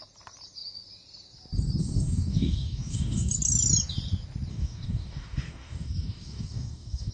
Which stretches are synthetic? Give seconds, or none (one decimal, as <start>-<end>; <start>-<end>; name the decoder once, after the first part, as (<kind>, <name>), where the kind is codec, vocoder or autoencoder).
1.8-3.3 (codec, DAC); 4.5-7.1